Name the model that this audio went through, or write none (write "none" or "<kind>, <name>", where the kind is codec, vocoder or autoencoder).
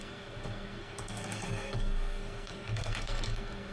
codec, SNAC